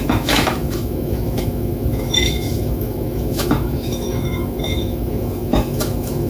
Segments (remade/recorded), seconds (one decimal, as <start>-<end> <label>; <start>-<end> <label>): 0.0-6.3 remade